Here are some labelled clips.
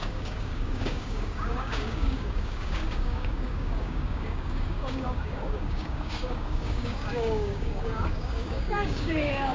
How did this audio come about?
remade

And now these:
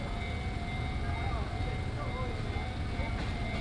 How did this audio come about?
recorded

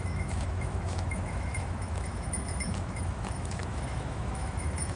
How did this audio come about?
remade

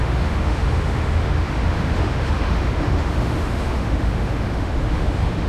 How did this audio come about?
remade